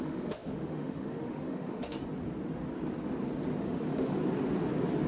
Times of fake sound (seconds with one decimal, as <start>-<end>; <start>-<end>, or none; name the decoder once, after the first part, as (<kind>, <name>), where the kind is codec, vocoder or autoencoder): 0.0-2.0 (autoencoder, DAC-VAE); 3.6-4.2